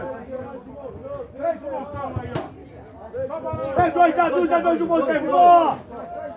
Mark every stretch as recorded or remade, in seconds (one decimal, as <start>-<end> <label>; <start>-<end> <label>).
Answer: 0.0-6.4 recorded